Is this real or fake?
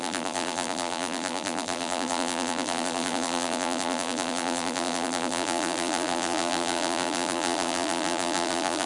fake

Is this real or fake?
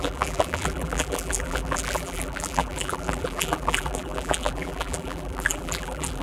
fake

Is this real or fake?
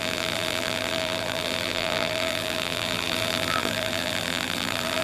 fake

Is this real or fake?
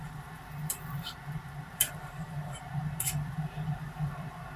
fake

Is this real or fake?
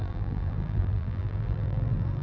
fake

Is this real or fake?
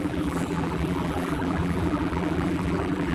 fake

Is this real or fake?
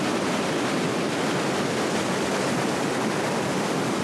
real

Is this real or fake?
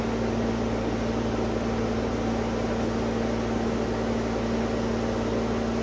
real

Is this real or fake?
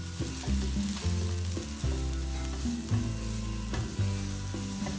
real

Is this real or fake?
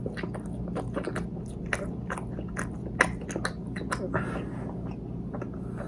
real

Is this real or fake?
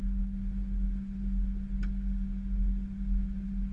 real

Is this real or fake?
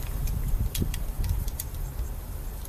fake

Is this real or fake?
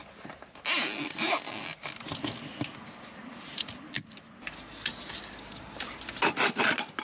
real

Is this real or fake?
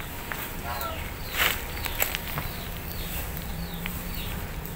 fake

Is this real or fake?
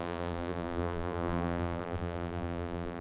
fake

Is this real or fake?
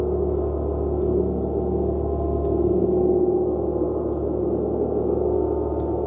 real